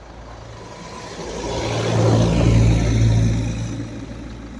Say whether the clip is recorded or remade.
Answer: recorded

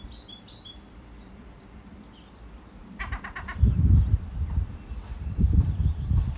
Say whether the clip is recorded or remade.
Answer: remade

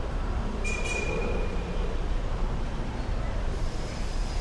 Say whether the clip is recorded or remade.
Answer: remade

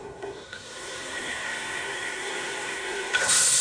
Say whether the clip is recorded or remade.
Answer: remade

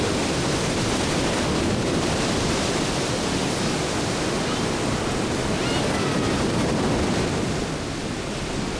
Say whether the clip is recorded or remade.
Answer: recorded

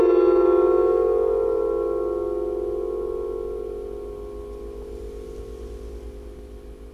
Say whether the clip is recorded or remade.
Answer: recorded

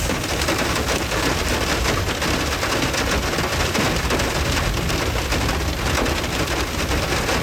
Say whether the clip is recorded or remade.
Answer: recorded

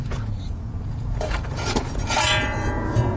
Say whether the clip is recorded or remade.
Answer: remade